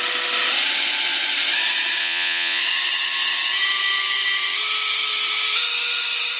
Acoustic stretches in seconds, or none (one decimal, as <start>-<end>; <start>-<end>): 0.0-2.0; 2.6-6.4